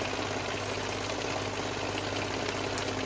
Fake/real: real